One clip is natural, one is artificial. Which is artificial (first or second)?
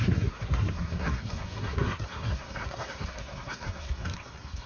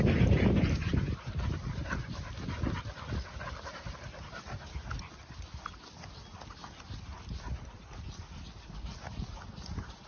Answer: first